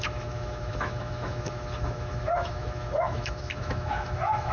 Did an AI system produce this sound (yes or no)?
yes